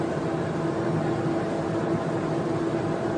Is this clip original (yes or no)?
yes